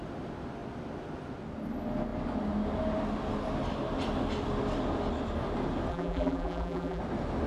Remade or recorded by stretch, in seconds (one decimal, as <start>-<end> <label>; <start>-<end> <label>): 0.0-5.9 recorded; 5.9-7.0 remade; 7.0-7.5 recorded